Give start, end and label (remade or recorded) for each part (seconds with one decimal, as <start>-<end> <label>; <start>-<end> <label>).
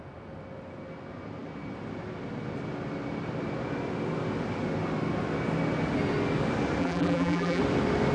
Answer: 0.0-6.8 recorded; 6.8-7.6 remade; 7.6-8.1 recorded